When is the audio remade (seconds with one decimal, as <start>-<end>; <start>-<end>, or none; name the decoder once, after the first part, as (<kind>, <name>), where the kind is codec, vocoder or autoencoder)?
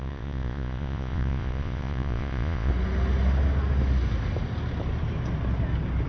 0.0-2.7 (vocoder, Vocos)